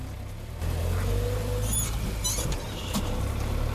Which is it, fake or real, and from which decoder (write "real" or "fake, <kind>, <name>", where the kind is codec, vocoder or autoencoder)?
real